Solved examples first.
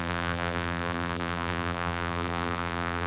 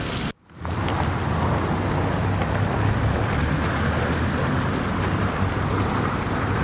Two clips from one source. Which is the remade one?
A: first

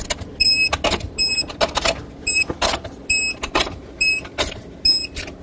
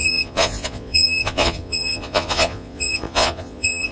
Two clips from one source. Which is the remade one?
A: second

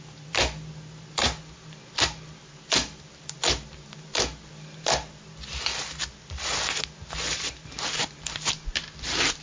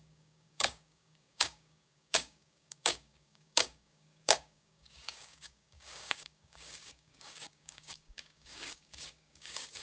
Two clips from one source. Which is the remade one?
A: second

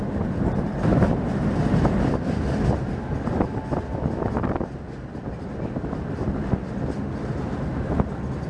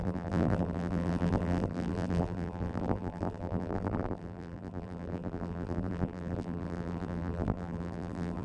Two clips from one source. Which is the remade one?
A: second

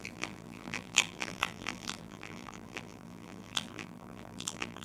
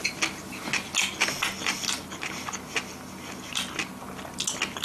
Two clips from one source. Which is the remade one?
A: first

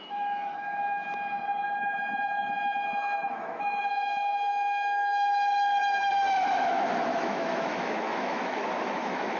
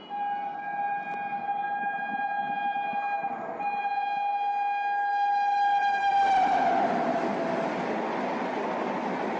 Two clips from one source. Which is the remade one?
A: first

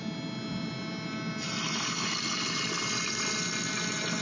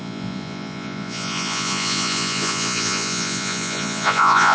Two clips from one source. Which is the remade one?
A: second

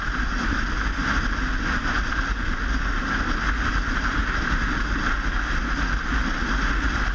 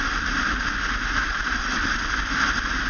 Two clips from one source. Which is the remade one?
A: second